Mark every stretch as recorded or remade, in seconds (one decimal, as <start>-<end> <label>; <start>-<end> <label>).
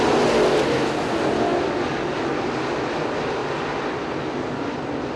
0.0-5.2 recorded